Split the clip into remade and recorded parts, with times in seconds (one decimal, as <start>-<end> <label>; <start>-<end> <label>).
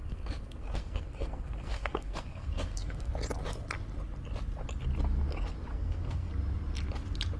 0.0-3.1 remade; 3.1-5.7 recorded; 5.7-6.3 remade; 6.3-7.4 recorded